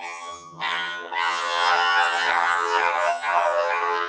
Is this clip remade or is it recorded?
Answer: remade